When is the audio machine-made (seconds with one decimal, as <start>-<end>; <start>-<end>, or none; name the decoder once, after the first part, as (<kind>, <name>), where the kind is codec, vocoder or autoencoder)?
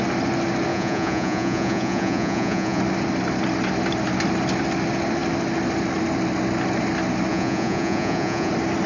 0.7-2.8 (vocoder, Vocos); 7.3-8.5